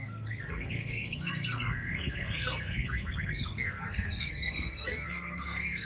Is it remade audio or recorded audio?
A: remade